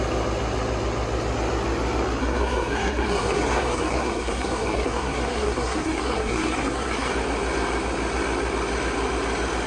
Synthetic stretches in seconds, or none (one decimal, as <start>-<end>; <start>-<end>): 2.2-7.1